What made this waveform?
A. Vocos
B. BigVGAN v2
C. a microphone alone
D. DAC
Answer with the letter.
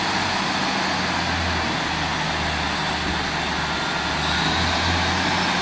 C